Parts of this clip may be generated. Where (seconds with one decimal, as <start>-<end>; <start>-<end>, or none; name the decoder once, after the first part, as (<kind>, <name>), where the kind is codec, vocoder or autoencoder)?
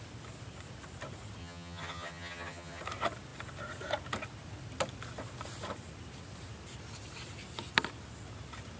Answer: 1.4-2.8 (vocoder, HiFi-GAN)